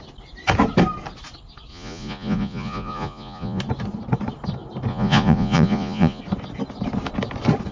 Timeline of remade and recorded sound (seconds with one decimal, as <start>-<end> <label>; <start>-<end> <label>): 0.0-1.7 recorded; 1.7-3.6 remade; 3.6-4.9 recorded; 4.9-6.2 remade; 6.2-7.7 recorded